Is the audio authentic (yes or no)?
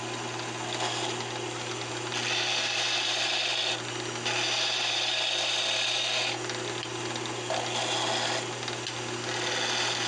yes